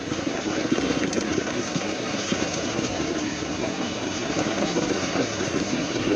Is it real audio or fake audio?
fake